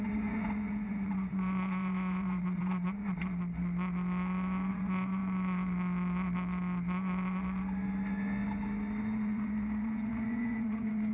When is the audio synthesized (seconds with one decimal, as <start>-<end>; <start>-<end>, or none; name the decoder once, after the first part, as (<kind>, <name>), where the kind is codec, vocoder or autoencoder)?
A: 0.0-3.0 (vocoder, Vocos); 4.7-5.2; 9.0-11.1